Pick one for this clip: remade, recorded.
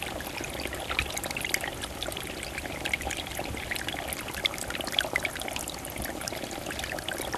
recorded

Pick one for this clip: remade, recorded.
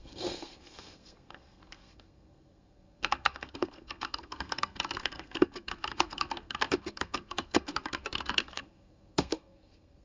remade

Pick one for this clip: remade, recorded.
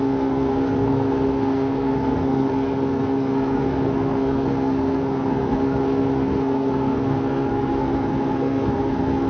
remade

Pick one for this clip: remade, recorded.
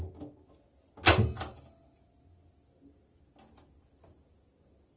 recorded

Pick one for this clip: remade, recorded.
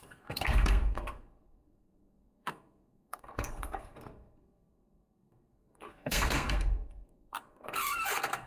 remade